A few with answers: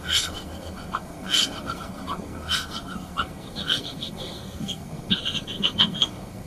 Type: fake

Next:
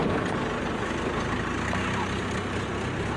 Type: real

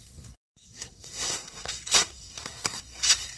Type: fake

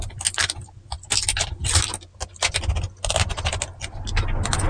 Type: real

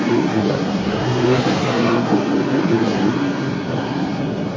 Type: fake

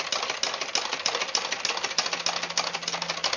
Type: real